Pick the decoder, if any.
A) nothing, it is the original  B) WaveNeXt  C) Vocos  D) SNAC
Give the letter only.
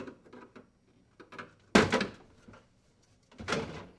A